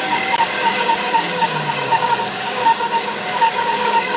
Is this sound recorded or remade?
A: remade